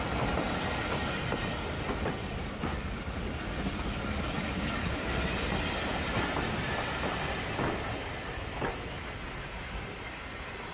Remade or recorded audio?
recorded